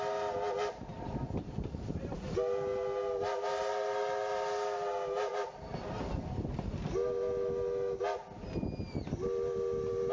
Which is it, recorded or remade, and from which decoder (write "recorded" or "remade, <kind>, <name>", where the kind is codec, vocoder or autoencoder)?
recorded